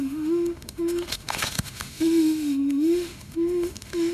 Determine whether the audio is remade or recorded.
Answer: remade